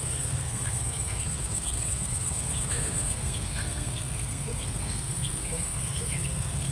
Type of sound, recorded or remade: remade